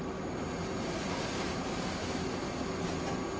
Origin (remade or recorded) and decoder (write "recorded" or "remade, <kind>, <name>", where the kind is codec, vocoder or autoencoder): recorded